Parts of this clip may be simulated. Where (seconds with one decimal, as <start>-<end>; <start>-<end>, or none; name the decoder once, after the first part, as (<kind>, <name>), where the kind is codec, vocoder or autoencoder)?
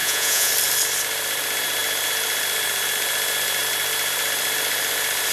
0.0-0.5 (vocoder, Vocos)